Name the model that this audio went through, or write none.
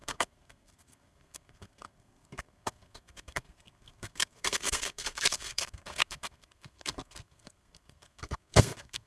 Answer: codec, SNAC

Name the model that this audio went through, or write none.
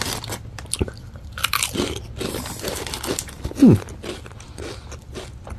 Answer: none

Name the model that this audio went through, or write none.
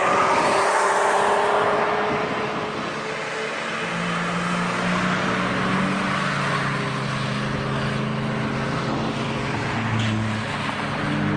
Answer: none